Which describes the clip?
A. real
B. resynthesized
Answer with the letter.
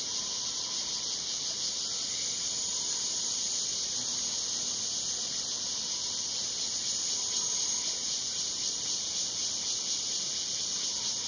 B